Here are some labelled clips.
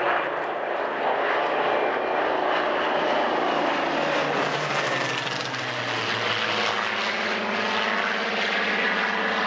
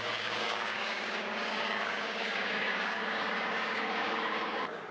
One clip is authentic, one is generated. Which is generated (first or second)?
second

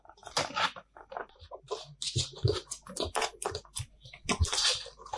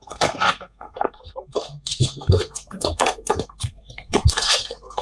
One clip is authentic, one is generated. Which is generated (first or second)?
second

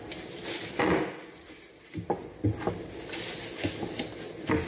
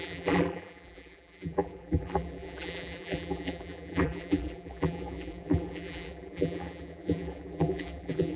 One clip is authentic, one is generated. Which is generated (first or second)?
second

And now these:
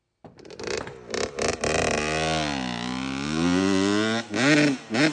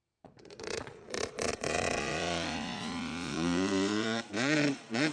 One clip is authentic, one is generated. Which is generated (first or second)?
second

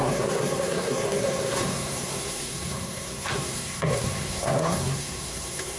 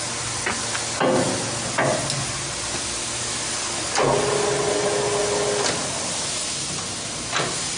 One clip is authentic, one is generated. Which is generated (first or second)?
first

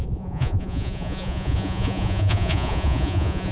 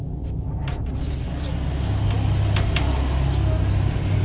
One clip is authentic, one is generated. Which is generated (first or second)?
first